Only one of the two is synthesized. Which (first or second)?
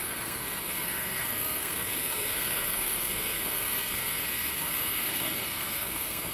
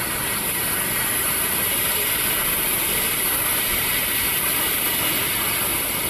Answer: first